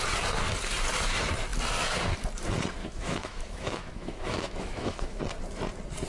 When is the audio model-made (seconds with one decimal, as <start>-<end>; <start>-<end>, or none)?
2.8-5.2